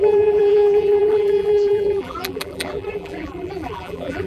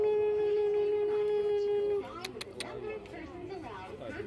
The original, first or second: second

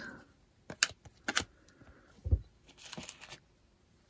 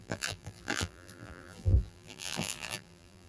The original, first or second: first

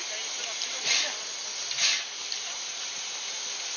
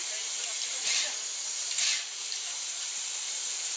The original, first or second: first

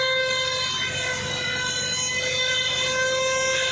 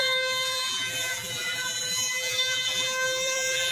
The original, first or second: first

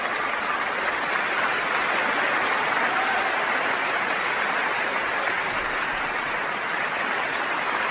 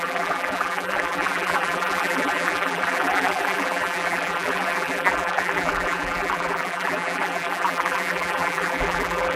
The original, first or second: first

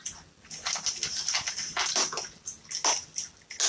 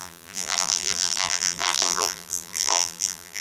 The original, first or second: first